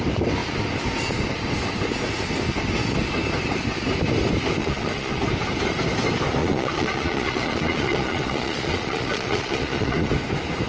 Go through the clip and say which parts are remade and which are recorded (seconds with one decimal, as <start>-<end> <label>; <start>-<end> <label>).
0.0-4.6 recorded; 4.6-5.2 remade; 5.2-6.4 recorded; 6.4-10.1 remade; 10.1-10.7 recorded